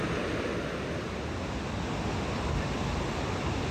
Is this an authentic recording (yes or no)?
yes